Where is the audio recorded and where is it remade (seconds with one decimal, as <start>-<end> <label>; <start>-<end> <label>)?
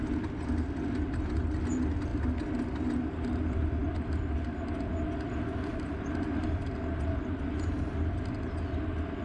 0.0-9.2 recorded